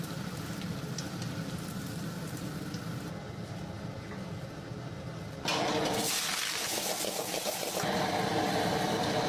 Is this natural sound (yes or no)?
yes